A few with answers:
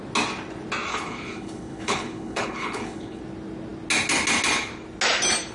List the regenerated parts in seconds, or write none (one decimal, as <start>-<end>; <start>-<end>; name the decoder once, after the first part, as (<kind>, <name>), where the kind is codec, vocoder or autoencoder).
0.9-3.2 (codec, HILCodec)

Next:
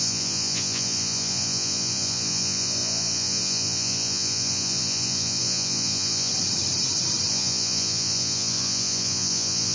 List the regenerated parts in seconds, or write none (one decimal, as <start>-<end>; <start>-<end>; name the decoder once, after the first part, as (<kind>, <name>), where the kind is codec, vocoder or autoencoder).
0.0-6.3 (vocoder, Vocos); 7.3-9.7

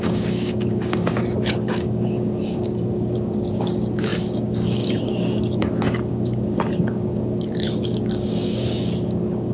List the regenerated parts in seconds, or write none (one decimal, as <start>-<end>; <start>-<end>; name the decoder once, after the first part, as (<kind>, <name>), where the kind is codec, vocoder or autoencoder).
0.0-9.5 (codec, DAC)

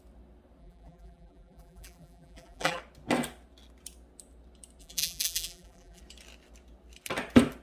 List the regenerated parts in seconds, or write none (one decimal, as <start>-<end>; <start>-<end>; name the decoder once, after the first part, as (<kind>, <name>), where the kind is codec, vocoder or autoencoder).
0.6-2.8 (vocoder, BigVGAN v2); 4.8-6.0

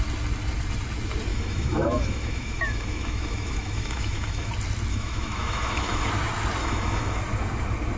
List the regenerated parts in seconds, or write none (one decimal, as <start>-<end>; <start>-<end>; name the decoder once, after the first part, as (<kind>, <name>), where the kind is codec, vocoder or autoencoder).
1.3-4.5 (autoencoder, DAC-VAE); 4.9-6.1; 6.6-7.2

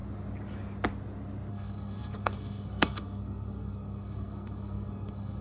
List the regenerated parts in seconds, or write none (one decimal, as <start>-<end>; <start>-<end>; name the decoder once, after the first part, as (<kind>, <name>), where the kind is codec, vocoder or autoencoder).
1.5-5.4 (codec, SNAC)

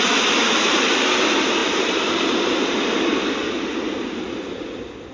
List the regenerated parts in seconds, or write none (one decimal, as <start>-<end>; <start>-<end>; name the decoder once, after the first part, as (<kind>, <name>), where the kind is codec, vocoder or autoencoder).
none

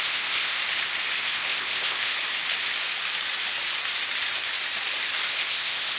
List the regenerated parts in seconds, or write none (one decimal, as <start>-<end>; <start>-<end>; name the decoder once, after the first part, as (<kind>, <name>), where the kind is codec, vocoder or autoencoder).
0.0-0.6 (codec, ZipCodec); 1.2-2.1; 5.3-6.0